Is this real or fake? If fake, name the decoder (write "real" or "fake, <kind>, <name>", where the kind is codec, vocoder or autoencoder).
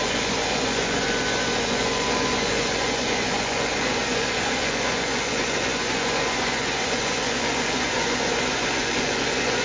fake, vocoder, Vocos